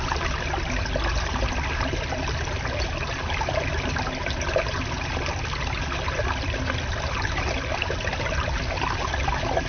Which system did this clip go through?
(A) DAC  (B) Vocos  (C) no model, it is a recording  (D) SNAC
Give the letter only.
C